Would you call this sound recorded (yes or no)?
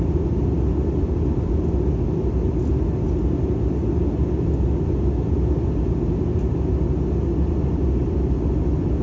yes